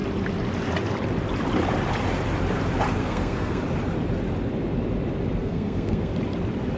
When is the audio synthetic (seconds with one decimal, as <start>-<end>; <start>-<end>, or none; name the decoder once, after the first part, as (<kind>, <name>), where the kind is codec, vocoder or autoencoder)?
3.0-3.6 (codec, SNAC); 5.4-6.1